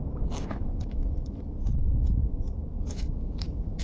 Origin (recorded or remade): remade